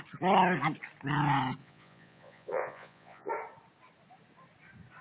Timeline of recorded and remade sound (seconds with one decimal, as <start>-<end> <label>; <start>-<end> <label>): 0.0-1.6 recorded; 1.6-3.3 remade; 3.3-5.0 recorded